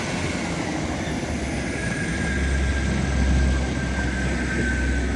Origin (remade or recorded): recorded